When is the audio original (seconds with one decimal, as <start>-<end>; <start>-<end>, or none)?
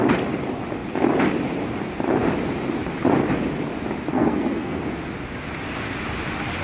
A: 0.0-4.1; 4.8-6.6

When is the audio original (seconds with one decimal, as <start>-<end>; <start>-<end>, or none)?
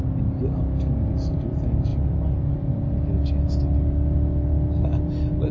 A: 0.0-5.5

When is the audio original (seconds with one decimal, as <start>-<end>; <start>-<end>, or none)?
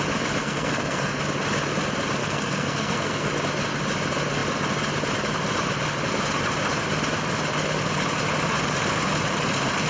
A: 0.0-0.4; 1.2-2.2; 3.3-9.9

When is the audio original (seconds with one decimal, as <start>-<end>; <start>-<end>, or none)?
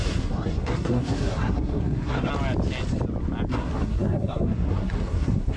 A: 2.3-3.5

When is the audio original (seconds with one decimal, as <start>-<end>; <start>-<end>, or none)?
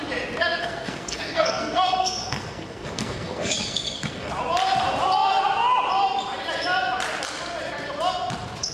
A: 0.0-0.4; 4.3-8.7